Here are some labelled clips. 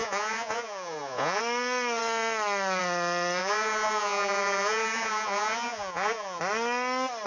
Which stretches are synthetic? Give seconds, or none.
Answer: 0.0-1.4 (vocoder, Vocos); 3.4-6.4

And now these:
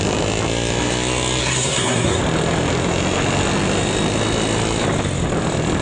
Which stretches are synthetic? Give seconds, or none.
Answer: 1.4-2.2 (codec, SNAC)